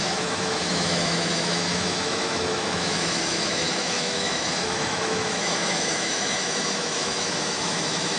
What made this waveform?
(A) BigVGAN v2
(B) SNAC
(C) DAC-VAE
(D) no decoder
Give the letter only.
C